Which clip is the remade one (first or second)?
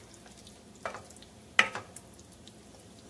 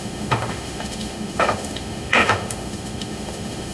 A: second